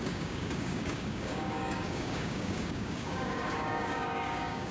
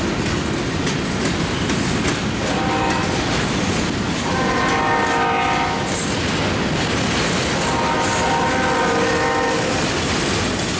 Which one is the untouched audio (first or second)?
second